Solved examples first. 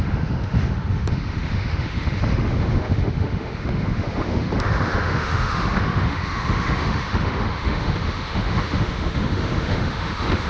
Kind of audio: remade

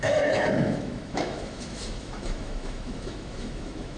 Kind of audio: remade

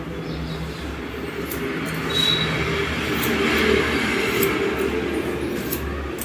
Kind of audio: recorded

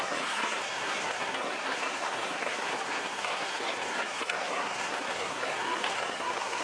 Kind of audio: remade